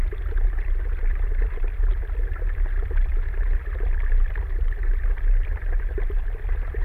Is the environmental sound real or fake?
real